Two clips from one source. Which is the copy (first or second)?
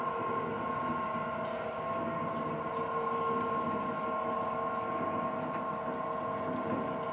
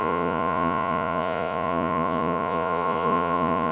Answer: second